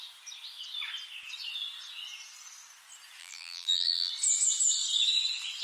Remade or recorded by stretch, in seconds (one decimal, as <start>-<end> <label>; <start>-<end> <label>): 0.0-3.2 recorded; 3.2-4.1 remade; 4.1-5.6 recorded